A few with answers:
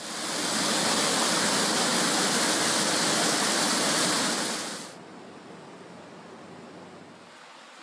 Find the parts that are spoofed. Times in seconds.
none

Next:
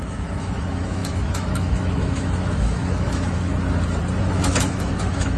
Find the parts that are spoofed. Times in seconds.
0.0-3.5 (autoencoder, DAC-VAE); 4.2-5.4

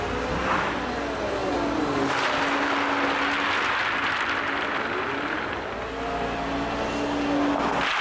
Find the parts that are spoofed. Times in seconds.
none

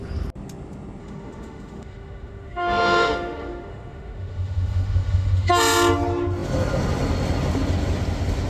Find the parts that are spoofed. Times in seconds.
1.0-5.5 (autoencoder, DAC-VAE)

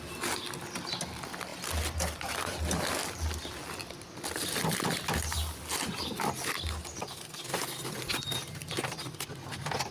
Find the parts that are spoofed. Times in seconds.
none

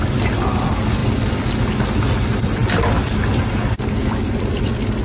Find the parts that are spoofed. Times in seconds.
none

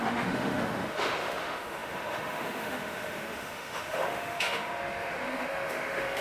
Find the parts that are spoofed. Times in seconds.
0.0-6.2 (autoencoder, DAC-VAE)